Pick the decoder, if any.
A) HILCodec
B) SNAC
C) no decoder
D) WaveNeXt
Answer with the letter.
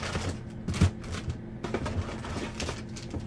C